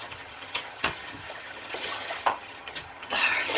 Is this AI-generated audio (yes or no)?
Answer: yes